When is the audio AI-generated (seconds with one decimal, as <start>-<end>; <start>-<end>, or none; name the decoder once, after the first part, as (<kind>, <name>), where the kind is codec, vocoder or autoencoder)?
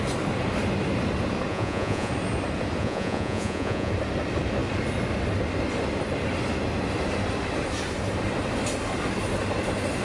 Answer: 1.5-2.1 (vocoder, Vocos); 2.8-3.9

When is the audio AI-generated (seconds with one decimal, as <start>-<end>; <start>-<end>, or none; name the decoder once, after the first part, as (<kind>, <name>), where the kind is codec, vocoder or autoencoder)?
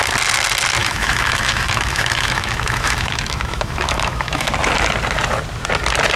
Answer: 0.8-4.5 (autoencoder, DAC-VAE)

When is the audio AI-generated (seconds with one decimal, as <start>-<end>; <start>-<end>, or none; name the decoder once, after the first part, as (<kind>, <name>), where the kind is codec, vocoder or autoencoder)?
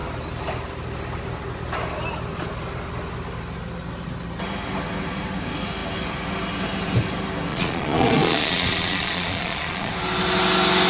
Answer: 7.5-9.9 (vocoder, Vocos)